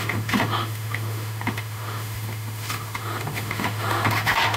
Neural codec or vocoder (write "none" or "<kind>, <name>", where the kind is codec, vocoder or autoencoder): autoencoder, DAC-VAE